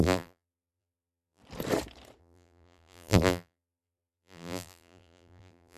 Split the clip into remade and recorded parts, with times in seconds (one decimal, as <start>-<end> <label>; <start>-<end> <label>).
0.0-1.4 remade; 1.4-2.2 recorded; 2.2-5.8 remade